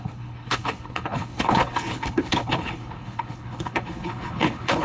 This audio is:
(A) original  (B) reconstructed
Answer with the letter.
B